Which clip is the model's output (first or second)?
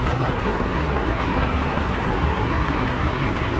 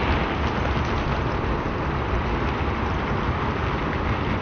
first